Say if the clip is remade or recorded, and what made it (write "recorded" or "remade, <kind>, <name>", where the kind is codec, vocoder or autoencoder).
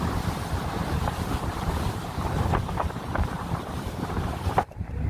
remade, vocoder, BigVGAN v2